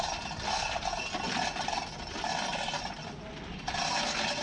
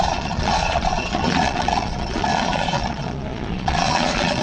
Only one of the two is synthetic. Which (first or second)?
second